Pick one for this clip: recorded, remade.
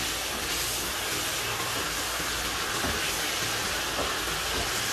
recorded